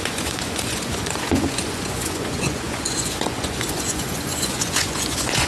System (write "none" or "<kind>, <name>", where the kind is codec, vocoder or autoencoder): vocoder, Vocos